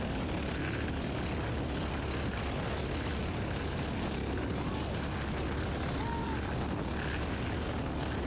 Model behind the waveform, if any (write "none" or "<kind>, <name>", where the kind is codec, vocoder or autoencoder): none